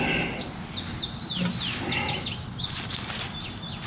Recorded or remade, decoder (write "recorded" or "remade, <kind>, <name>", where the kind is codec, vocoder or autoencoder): recorded